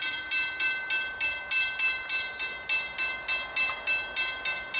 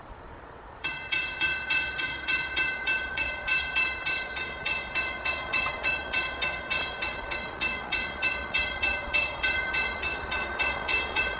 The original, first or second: first